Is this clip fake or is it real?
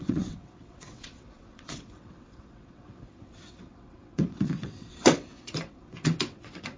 fake